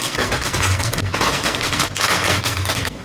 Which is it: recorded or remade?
remade